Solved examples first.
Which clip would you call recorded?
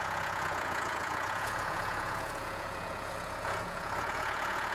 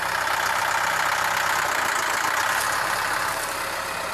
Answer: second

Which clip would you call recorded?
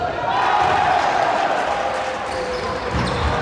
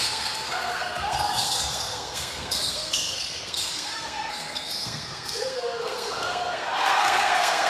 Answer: first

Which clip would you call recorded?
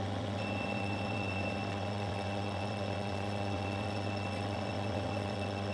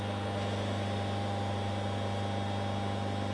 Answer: second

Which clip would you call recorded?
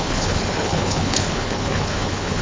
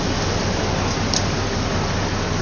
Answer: second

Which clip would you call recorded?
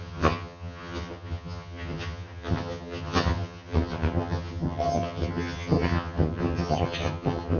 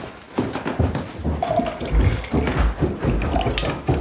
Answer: second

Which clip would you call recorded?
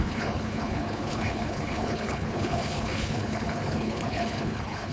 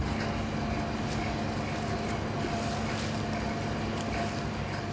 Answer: second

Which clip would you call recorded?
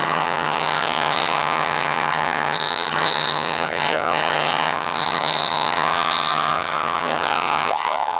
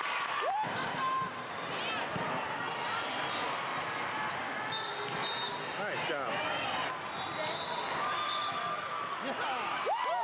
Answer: second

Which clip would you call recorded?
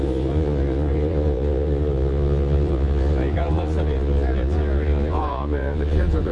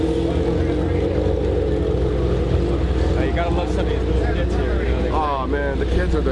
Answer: second